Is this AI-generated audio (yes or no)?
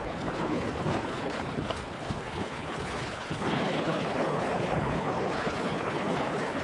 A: yes